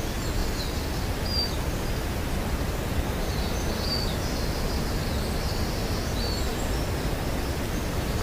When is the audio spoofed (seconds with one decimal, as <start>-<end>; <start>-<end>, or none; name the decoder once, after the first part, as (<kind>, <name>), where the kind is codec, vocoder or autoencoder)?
none